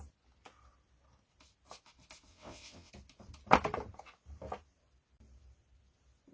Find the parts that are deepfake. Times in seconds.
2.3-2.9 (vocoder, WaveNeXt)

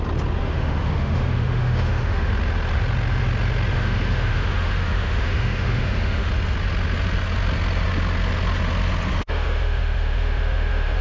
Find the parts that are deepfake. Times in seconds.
0.4-2.3 (autoencoder, DAC-VAE); 3.7-6.3; 9.1-11.0